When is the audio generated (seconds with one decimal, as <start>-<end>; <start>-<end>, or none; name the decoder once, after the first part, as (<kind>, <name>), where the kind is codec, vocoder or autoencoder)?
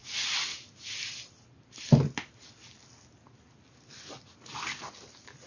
none